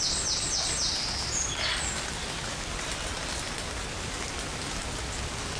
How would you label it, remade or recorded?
recorded